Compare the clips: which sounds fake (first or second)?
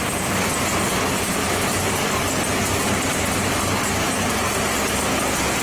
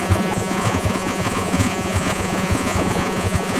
second